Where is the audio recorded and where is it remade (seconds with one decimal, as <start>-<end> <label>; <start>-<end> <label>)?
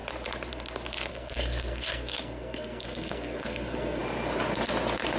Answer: 0.0-1.1 recorded; 1.1-4.0 remade; 4.0-5.2 recorded